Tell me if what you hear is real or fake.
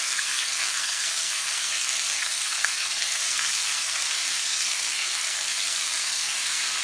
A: fake